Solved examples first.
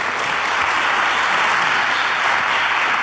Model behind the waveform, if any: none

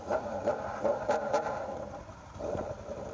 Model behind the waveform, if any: vocoder, BigVGAN v2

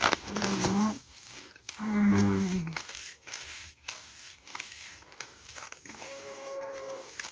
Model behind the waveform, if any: codec, DAC